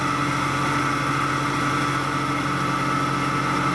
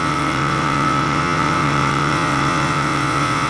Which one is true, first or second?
first